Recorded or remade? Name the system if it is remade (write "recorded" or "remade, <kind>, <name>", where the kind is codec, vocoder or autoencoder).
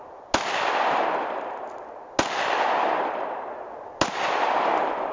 recorded